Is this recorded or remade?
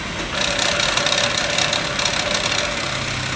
recorded